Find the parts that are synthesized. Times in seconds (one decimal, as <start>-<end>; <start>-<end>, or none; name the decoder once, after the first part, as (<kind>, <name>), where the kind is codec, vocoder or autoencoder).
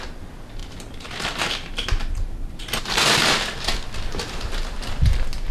none